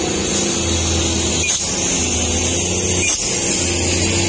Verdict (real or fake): real